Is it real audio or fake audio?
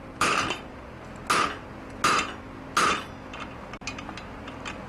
real